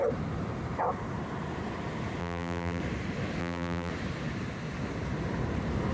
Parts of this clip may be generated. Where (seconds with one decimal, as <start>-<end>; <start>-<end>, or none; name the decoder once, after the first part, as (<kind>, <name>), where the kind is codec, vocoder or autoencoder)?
2.2-2.8 (vocoder, BigVGAN v2); 3.4-3.9